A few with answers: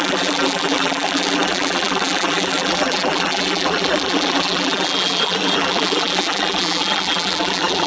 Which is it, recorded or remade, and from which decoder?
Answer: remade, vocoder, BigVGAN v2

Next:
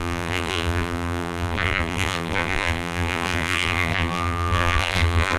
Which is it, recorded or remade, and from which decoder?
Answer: remade, vocoder, BigVGAN v2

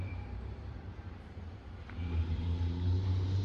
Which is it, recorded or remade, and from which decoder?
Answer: remade, vocoder, BigVGAN v2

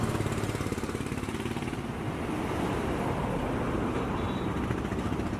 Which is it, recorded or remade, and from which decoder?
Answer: remade, vocoder, BigVGAN v2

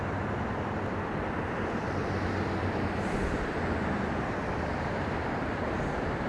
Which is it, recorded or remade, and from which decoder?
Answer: remade, vocoder, BigVGAN v2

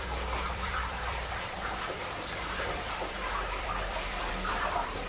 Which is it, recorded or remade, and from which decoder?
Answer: remade, vocoder, BigVGAN v2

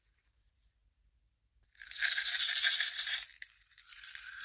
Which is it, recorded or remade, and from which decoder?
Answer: remade, vocoder, BigVGAN v2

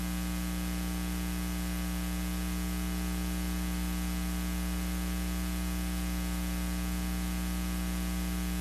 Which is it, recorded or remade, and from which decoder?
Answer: recorded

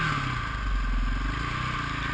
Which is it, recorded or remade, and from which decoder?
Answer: recorded